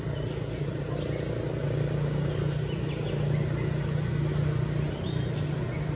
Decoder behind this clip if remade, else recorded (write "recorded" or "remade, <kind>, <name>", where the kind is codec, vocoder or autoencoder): recorded